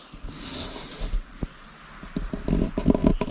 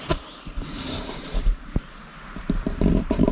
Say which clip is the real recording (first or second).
first